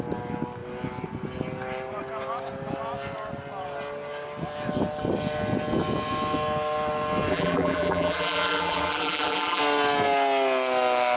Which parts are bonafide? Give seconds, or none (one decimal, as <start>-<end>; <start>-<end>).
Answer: 0.0-7.3; 9.6-11.2